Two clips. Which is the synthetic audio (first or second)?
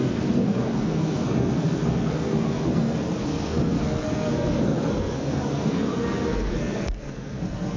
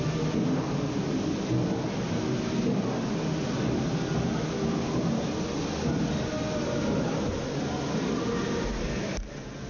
first